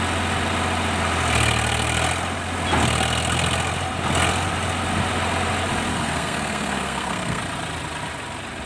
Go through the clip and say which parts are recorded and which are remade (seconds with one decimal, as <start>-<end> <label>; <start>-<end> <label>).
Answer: 0.0-5.9 recorded; 5.9-7.4 remade; 7.4-8.7 recorded

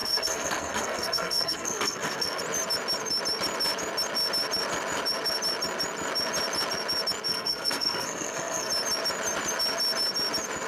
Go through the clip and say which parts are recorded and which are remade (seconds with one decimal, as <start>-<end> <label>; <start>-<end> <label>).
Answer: 0.0-2.4 remade; 2.4-7.3 recorded; 7.3-8.7 remade; 8.7-10.7 recorded

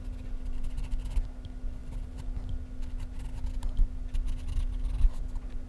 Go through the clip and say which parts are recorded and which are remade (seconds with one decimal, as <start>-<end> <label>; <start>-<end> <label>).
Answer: 0.0-5.7 recorded

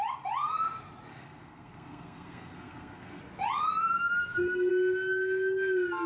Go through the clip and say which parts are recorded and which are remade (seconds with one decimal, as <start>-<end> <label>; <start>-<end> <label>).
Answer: 0.0-1.1 recorded; 1.1-3.2 remade; 3.2-4.2 recorded; 4.2-4.7 remade; 4.7-6.1 recorded

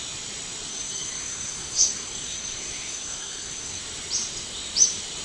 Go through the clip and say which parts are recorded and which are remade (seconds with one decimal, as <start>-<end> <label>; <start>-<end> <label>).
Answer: 0.0-0.7 recorded; 0.7-3.8 remade; 3.8-5.2 recorded

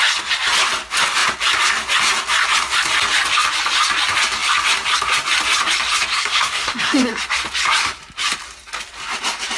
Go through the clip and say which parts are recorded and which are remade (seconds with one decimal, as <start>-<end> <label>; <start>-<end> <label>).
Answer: 0.0-6.1 recorded; 6.1-7.1 remade; 7.1-9.6 recorded